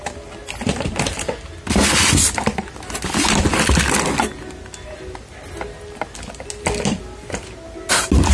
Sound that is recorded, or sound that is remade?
recorded